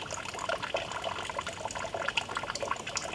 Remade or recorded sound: recorded